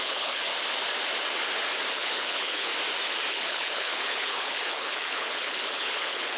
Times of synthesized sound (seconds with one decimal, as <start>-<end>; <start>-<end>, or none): 0.0-0.5; 1.9-2.7; 3.3-6.4